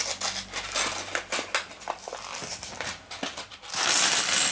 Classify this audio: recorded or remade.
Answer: recorded